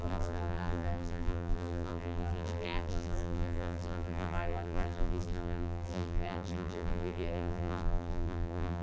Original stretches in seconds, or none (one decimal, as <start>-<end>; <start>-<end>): none